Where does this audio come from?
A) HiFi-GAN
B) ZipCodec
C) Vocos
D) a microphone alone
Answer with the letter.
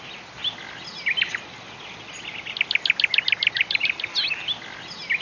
D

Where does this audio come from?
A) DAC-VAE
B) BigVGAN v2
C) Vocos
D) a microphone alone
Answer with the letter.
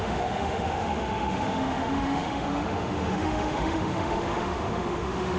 A